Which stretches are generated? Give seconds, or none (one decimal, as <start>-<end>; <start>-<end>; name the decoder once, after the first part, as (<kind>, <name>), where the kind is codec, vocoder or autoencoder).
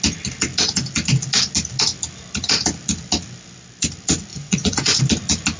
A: 4.3-5.0 (vocoder, Vocos)